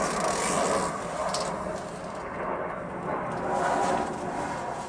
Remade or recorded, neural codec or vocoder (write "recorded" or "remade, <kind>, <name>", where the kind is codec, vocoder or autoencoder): recorded